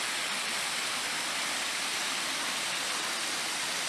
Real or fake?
fake